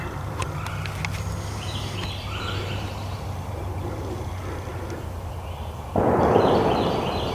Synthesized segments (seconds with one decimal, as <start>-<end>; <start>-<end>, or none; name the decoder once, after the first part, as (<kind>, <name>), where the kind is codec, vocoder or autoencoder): 0.0-0.4 (vocoder, BigVGAN v2); 2.7-4.4; 5.9-7.3